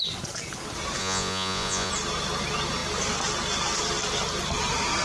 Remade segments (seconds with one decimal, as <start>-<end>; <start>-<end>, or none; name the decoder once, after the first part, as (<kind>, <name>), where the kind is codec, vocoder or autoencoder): 1.0-1.9 (vocoder, Vocos)